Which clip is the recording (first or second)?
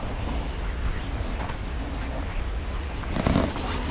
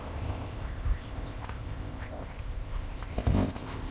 first